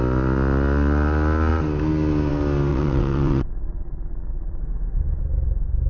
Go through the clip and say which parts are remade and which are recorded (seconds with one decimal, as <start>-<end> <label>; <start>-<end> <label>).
0.0-2.7 recorded; 2.7-4.6 remade; 4.6-5.9 recorded